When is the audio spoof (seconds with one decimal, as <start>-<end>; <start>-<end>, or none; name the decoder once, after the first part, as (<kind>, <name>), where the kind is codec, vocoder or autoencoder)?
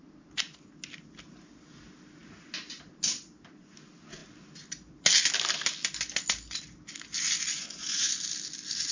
7.5-8.1 (vocoder, Vocos)